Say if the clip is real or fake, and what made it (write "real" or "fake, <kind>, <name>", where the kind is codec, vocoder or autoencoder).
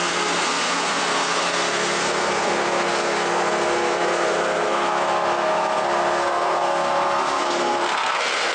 fake, codec, SNAC